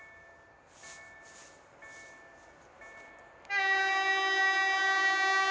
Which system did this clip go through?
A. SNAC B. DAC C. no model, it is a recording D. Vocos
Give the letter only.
C